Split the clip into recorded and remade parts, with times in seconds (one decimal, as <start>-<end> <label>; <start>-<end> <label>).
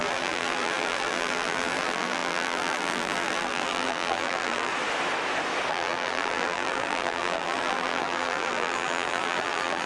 0.0-4.7 remade; 4.7-5.7 recorded; 5.7-9.9 remade